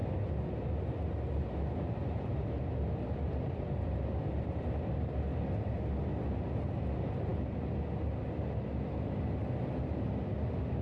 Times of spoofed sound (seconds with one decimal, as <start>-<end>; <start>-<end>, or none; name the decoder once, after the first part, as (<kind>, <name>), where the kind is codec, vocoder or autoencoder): 0.0-0.7 (vocoder, BigVGAN v2); 2.0-5.1